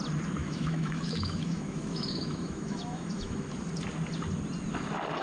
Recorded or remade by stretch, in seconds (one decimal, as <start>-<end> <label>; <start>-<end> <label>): 0.0-0.4 recorded; 0.4-3.5 remade; 3.5-5.2 recorded